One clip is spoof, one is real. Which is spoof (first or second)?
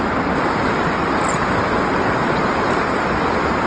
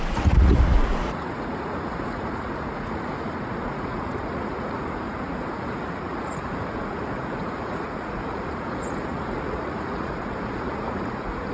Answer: second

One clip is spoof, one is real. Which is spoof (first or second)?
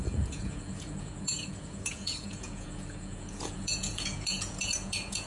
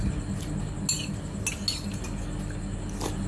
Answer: first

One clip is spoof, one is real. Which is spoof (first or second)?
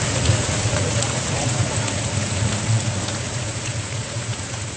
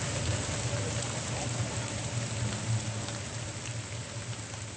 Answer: first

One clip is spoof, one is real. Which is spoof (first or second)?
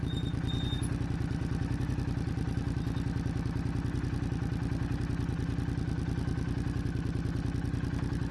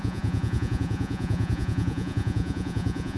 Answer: second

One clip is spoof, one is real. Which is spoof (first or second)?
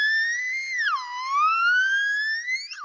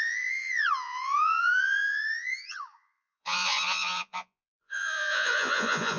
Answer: second